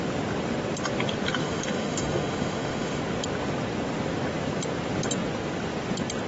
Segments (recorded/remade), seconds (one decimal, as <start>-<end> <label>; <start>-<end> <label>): 0.0-1.4 recorded; 1.4-3.0 remade; 3.0-6.3 recorded